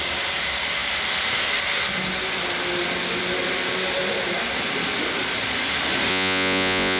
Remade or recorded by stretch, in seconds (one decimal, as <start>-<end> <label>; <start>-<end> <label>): 0.0-6.1 recorded; 6.1-7.0 remade